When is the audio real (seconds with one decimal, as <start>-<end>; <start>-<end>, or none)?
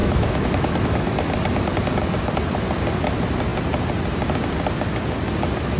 1.3-5.8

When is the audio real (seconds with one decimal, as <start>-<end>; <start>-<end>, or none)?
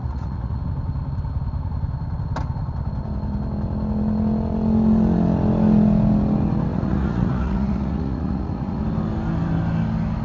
0.6-6.7; 8.8-10.2